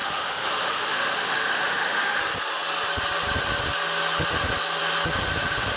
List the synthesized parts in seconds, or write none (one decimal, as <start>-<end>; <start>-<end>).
0.0-2.2

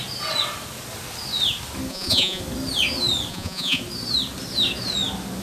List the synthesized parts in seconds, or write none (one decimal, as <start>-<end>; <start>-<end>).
1.9-2.4; 3.3-3.8

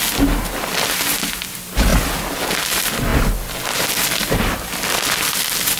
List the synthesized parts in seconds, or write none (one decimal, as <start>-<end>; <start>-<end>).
1.9-2.5

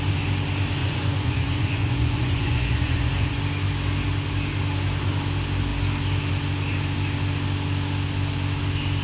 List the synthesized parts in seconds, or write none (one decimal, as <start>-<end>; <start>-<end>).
0.8-3.4

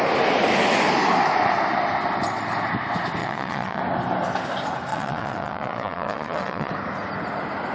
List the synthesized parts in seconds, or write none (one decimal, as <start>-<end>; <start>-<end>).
3.2-3.8; 4.9-6.7

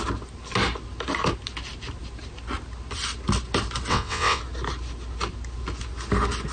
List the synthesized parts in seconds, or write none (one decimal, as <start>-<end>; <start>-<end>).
3.9-4.4